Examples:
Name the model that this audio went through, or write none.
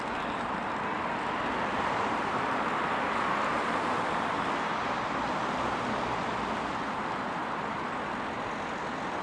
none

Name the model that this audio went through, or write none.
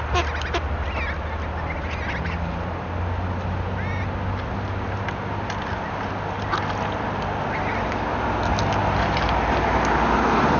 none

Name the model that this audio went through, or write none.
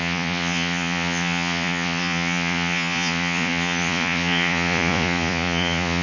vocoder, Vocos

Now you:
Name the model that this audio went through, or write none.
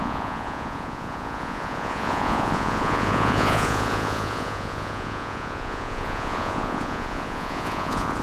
vocoder, Vocos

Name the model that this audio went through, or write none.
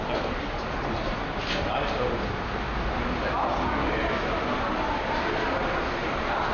none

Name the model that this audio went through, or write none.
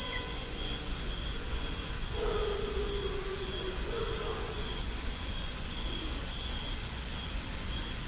vocoder, Vocos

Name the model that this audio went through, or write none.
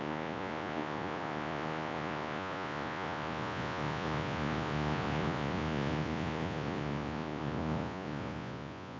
vocoder, Vocos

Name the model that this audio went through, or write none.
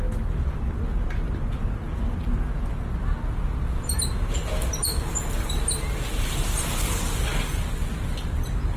none